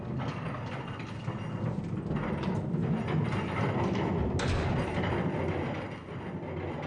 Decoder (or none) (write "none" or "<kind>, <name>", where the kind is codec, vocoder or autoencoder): none